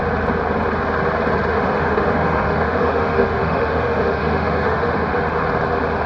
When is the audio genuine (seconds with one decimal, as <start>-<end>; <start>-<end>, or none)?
0.0-1.5; 5.2-6.1